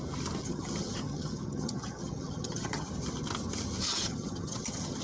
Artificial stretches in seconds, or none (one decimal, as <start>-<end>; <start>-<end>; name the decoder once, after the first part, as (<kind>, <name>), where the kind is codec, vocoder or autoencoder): 0.4-2.9 (vocoder, HiFi-GAN); 3.9-5.0